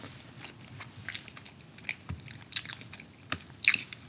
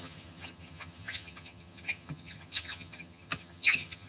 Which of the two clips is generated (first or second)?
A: second